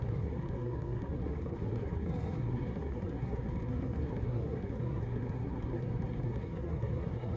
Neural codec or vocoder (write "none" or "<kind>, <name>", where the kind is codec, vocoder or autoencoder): codec, SNAC